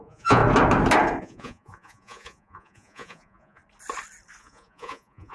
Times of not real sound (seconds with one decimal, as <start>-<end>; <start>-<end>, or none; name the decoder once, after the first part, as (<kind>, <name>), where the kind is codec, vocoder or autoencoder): 0.0-0.4 (vocoder, Vocos); 1.2-3.6; 4.4-5.3